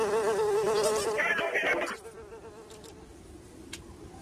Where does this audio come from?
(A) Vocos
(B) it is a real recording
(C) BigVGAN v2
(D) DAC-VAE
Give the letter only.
B